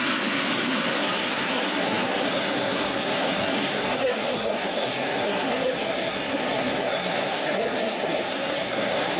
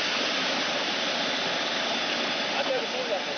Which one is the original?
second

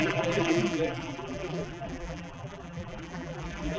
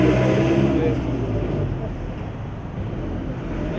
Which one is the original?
second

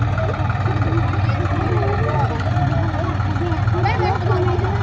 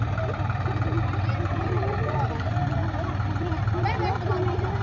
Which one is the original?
first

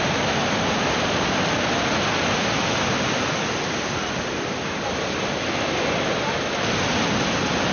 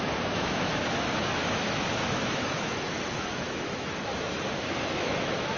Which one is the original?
first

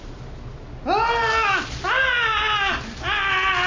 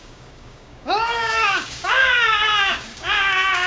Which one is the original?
first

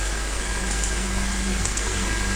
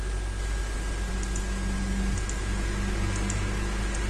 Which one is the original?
second